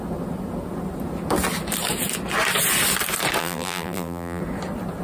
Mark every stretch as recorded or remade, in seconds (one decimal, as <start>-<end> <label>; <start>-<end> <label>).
0.0-3.4 recorded; 3.4-4.4 remade; 4.4-5.0 recorded